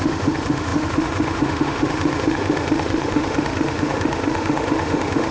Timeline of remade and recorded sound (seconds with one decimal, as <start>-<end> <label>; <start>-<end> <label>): 0.0-5.3 remade